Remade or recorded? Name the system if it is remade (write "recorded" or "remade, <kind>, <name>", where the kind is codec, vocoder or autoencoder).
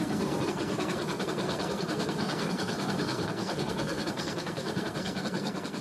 remade, codec, SNAC